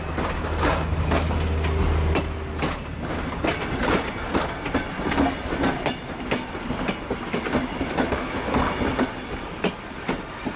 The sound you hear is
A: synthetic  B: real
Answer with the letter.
B